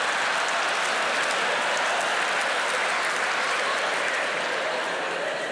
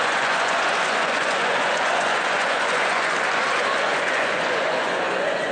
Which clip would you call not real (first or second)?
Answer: second